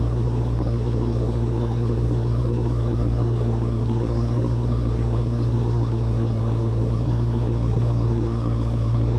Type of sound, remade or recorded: remade